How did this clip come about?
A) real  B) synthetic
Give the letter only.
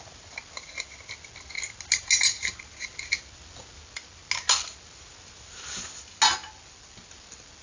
A